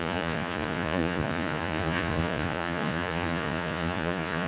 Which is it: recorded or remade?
remade